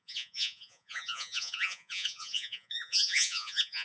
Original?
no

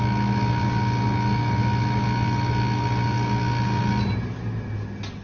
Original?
yes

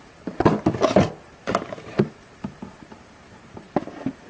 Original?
no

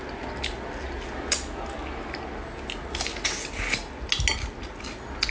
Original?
yes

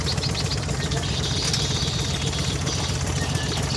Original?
yes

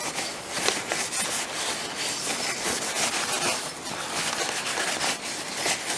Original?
yes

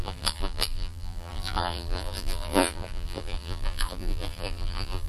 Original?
no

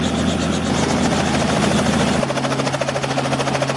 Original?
yes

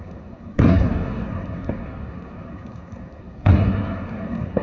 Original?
no